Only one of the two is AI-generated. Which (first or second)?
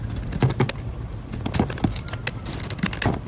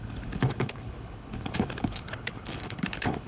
second